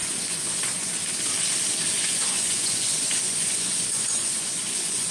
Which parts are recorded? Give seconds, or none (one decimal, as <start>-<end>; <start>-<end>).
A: 0.9-1.9